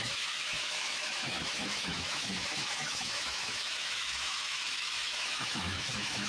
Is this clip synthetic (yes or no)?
yes